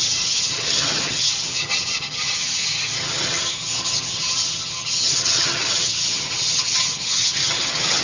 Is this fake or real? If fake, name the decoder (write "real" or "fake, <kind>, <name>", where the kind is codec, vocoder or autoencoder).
fake, vocoder, HiFi-GAN